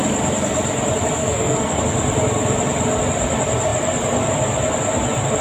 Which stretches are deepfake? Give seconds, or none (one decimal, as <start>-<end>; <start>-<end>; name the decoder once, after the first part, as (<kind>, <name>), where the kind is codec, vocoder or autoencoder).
1.2-1.8 (codec, SNAC)